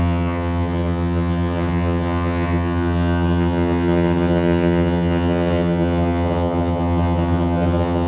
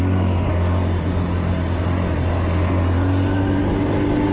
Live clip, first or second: second